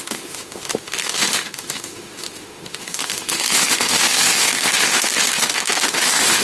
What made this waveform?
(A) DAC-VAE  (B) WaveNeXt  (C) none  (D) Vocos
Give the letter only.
A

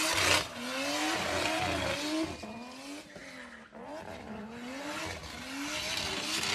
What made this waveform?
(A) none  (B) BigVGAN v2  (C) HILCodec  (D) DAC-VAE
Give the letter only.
A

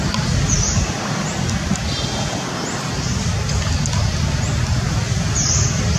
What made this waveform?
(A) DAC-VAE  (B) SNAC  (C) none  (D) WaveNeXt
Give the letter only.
C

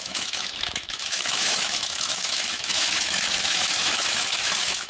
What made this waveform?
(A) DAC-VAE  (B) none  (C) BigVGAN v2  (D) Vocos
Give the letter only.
A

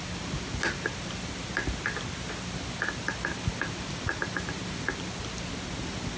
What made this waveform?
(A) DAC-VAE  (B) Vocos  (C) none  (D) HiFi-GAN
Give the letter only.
C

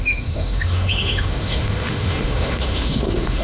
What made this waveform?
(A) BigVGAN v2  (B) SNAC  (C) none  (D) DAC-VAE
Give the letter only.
D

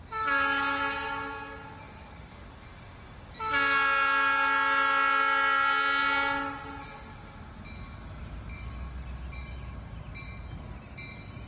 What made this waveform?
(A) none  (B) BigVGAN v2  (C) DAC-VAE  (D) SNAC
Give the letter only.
A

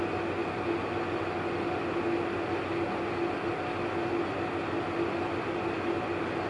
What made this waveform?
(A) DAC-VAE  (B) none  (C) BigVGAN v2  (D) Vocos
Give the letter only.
B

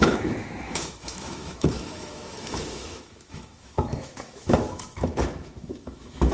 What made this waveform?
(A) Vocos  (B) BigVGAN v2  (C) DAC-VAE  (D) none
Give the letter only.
C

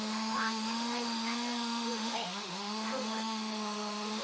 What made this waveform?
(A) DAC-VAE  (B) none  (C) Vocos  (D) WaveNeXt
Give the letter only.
A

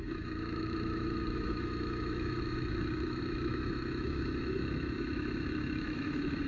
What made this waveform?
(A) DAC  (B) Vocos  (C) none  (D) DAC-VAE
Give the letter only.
D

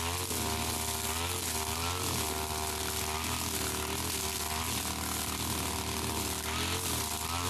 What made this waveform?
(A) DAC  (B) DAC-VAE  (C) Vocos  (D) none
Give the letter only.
D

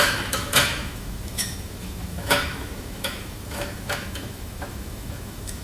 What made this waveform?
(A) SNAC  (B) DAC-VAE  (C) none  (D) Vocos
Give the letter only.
B